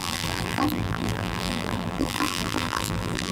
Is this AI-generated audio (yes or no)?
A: yes